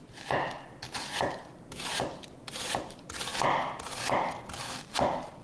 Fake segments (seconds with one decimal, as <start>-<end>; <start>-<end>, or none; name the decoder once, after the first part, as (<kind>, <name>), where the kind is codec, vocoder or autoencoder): none